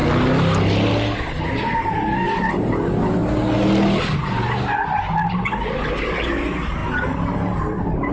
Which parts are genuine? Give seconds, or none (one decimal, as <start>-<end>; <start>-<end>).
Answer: 0.0-8.1